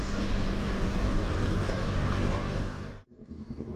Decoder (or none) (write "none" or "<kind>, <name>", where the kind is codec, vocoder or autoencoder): codec, DAC